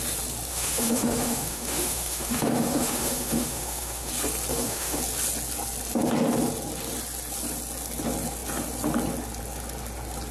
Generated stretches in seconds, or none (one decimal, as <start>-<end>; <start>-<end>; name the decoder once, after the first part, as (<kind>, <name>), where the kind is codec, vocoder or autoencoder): 0.5-4.1 (autoencoder, DAC-VAE); 4.5-5.0